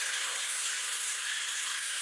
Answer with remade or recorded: remade